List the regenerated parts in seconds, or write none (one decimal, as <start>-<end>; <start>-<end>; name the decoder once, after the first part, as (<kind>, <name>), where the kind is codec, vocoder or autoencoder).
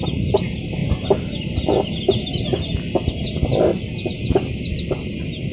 none